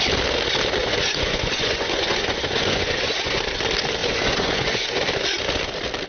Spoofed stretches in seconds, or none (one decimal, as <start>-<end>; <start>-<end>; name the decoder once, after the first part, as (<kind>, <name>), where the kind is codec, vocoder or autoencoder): 0.8-3.4 (vocoder, Vocos); 4.0-5.0